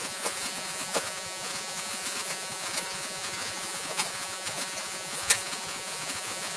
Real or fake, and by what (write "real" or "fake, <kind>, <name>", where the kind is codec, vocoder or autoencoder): fake, vocoder, Vocos